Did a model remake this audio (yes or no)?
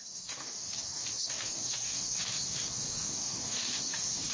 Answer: yes